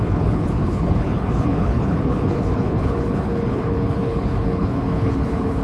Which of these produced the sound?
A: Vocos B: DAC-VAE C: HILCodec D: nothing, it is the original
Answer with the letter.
C